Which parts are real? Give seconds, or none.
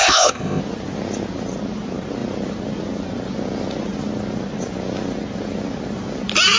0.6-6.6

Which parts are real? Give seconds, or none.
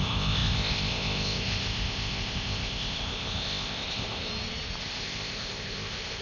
4.3-4.8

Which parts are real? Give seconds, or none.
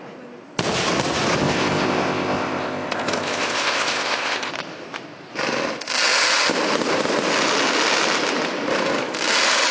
0.0-1.4; 4.5-9.7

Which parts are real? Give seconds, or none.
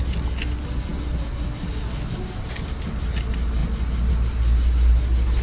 0.0-5.4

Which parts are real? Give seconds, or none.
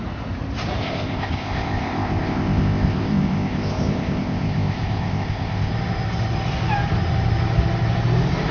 0.0-0.8; 5.7-8.5